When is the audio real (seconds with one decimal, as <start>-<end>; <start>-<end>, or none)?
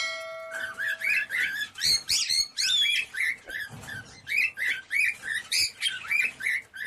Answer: 0.0-2.5; 4.1-6.9